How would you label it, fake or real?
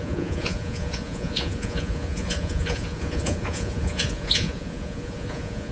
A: fake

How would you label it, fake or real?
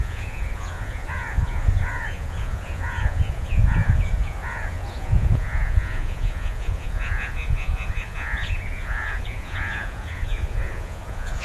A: fake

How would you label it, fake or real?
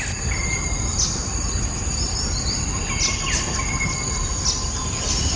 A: real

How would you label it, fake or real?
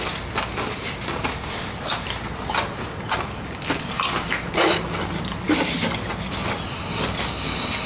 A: real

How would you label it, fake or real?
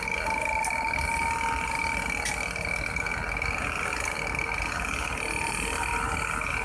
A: real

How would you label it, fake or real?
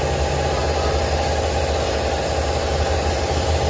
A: real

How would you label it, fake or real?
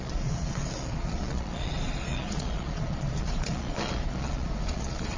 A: fake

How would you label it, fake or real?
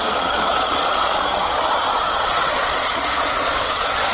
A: fake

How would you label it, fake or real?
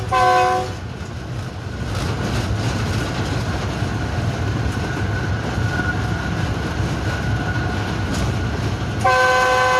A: real